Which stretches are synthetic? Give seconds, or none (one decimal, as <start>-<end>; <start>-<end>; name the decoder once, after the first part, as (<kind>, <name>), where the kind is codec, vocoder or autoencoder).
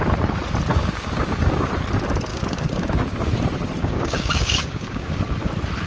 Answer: 0.7-1.7 (codec, DAC); 2.3-3.3; 3.8-5.2